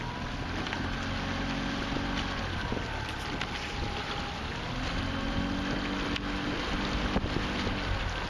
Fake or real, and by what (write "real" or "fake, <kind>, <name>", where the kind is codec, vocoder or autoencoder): real